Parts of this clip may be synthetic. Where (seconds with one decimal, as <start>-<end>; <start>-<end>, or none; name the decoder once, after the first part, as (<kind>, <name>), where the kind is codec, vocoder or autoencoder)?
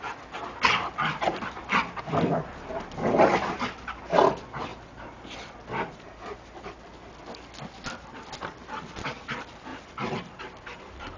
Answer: none